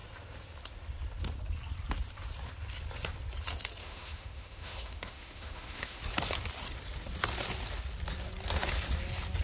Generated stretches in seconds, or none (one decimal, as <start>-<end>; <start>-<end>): 3.8-6.0